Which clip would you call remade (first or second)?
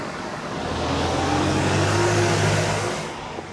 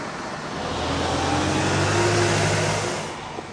first